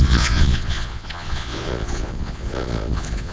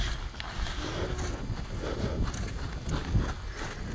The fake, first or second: first